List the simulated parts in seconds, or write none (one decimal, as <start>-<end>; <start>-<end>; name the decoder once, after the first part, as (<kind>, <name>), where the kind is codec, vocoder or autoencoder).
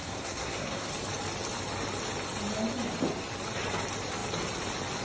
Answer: 0.0-0.9 (codec, SNAC)